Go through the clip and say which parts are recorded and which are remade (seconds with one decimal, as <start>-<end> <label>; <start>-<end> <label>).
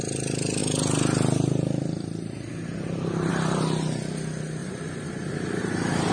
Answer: 0.0-4.6 recorded; 4.6-6.1 remade